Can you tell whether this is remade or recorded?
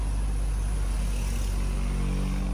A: recorded